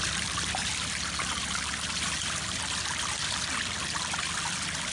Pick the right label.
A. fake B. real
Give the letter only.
B